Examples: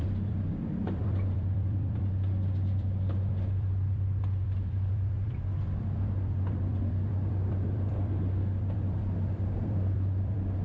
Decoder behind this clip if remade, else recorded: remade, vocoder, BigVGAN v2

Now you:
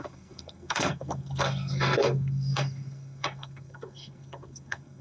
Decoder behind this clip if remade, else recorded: remade, codec, SNAC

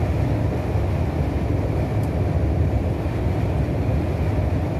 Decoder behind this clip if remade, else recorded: recorded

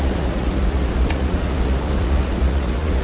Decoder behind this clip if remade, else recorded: remade, vocoder, Vocos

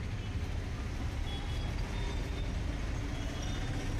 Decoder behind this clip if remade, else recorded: recorded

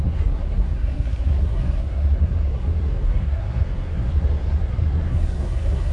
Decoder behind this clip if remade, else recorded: remade, codec, SNAC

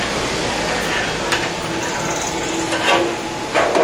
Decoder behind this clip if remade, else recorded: recorded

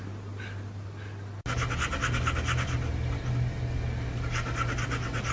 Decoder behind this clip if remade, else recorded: recorded